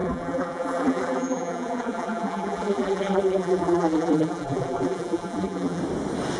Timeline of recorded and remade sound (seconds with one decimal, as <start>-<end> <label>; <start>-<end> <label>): 0.0-5.8 remade; 5.8-6.4 recorded